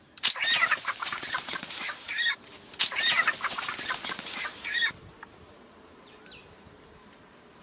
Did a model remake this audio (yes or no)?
yes